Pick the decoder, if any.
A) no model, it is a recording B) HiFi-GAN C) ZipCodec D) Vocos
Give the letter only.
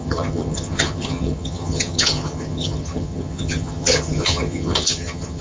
B